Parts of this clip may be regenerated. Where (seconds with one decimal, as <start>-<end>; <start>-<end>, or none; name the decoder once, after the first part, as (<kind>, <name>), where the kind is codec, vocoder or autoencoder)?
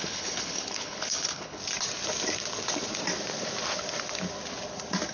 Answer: 0.0-1.6 (codec, HILCodec)